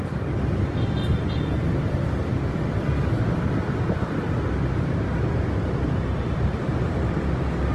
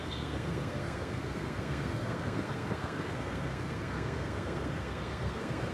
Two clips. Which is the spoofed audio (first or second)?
second